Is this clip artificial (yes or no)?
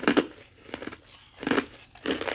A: no